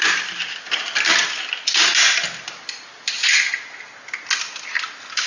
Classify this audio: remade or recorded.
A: recorded